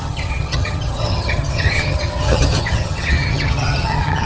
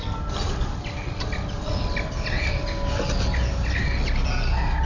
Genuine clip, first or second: second